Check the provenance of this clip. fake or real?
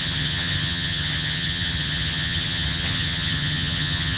fake